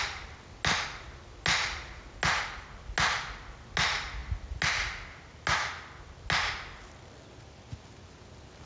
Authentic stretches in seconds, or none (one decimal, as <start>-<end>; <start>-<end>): 0.0-8.7